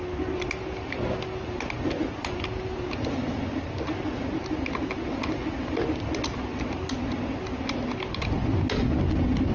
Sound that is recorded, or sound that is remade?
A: recorded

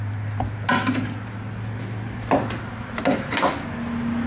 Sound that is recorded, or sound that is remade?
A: recorded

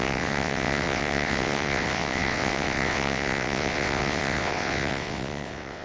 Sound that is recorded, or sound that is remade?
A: remade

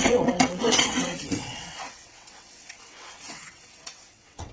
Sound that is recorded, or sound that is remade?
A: remade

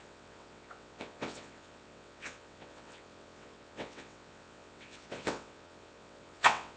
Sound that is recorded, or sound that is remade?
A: remade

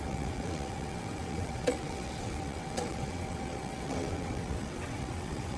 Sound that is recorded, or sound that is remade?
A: remade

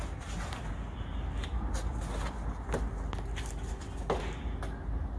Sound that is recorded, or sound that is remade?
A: recorded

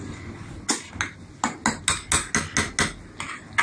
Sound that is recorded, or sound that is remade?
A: recorded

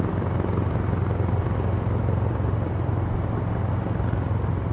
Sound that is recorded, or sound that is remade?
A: recorded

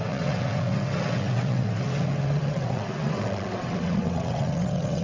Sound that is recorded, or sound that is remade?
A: remade